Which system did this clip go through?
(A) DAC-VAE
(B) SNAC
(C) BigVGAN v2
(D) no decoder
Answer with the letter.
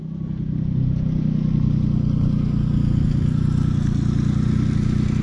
D